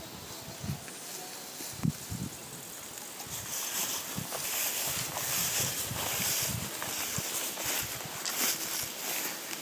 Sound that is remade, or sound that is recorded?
recorded